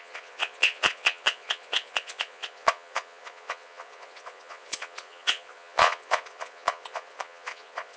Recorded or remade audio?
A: remade